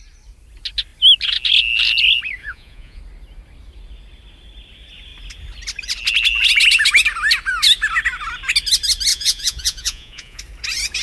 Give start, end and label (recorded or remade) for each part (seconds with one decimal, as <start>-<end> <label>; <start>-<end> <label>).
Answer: 0.0-2.4 recorded; 2.4-3.0 remade; 3.0-9.1 recorded; 9.1-10.4 remade; 10.4-11.0 recorded